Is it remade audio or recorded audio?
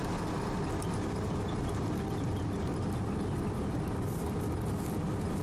recorded